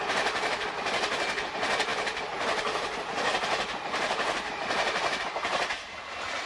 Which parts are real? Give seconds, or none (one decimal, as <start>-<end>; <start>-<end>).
0.0-1.9; 5.2-6.5